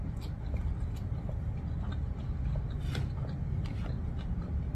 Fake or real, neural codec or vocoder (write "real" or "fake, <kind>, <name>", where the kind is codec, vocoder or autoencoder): real